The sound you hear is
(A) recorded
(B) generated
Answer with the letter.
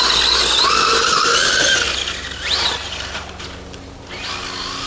A